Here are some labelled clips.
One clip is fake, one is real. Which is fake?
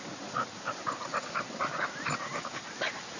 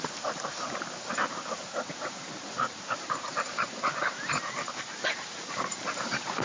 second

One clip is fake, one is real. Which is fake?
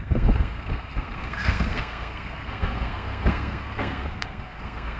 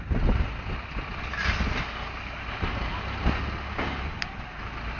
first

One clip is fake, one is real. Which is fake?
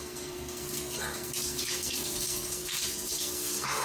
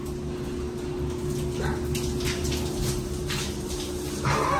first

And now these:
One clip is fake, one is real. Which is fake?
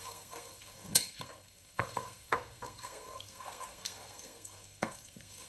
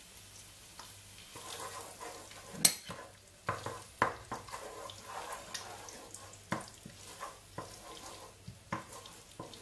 first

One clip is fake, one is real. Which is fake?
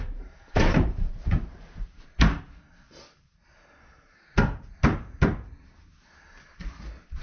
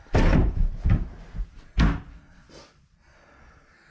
first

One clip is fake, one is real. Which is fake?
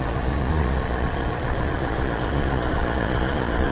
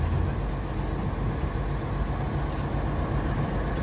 first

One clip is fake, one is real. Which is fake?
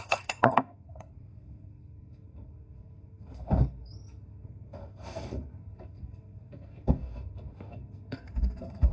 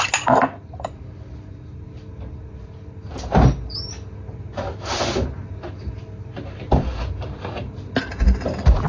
first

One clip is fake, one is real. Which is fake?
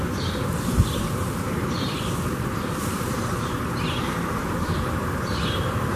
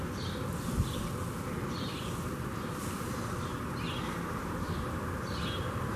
first